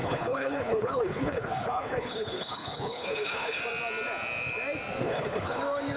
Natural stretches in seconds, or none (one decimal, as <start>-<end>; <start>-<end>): 3.6-5.0; 5.6-6.0